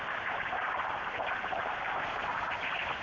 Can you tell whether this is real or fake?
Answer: fake